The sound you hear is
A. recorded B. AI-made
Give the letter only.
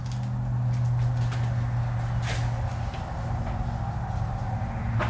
A